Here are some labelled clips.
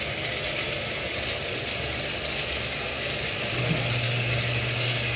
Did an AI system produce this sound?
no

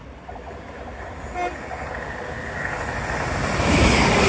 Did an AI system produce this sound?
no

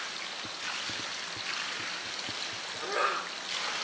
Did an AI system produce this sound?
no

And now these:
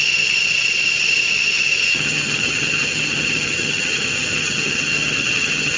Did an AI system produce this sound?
yes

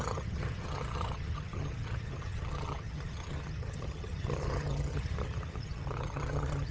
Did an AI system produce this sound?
yes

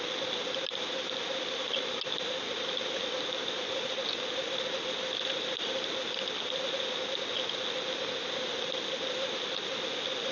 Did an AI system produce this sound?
no